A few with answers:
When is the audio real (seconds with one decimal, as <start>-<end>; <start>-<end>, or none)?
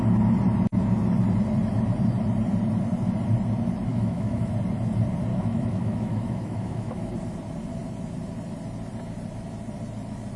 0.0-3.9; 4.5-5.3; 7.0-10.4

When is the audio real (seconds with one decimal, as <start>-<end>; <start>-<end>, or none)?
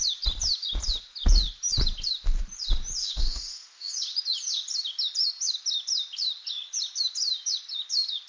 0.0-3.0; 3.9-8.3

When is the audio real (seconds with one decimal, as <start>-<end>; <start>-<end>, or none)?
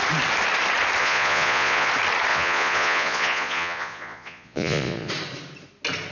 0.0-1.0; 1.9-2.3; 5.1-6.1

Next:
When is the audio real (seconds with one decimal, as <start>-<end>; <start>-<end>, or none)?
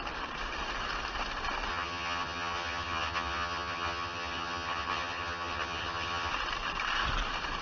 0.0-1.7; 6.3-7.6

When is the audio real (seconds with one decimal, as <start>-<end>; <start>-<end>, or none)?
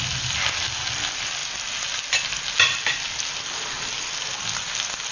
0.0-5.1